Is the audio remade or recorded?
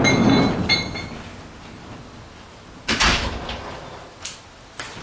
recorded